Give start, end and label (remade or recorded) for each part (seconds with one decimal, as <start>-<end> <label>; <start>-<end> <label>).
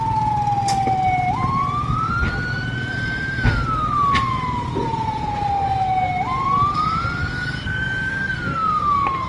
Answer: 0.0-7.2 recorded; 7.2-8.3 remade; 8.3-9.3 recorded